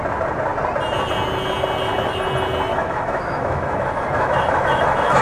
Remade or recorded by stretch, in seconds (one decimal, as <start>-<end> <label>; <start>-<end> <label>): 0.0-2.7 recorded; 2.7-5.2 remade